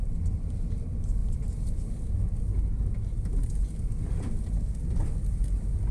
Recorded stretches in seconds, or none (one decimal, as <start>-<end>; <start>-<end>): 1.2-4.7